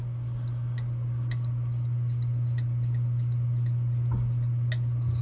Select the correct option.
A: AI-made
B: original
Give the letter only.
B